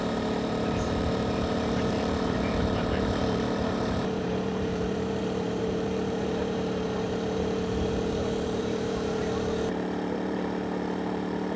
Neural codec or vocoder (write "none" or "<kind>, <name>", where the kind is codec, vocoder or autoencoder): vocoder, BigVGAN v2